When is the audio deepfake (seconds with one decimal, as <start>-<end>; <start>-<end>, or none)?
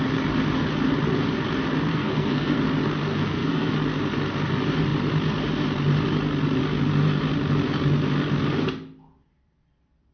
1.9-2.6; 3.1-3.7